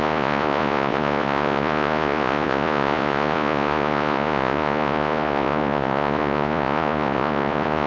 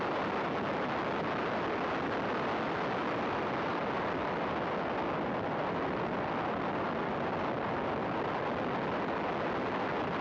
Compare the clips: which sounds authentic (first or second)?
second